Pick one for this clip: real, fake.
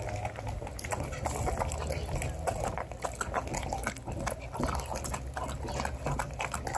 real